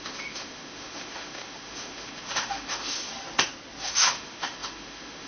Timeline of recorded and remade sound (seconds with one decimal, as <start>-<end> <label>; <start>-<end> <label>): 0.0-3.1 remade; 3.1-3.8 recorded; 3.8-5.3 remade